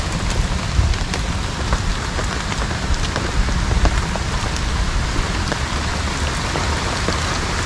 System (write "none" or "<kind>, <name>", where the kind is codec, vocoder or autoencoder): none